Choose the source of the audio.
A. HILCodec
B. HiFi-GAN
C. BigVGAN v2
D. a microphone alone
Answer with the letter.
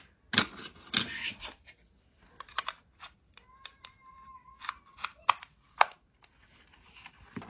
D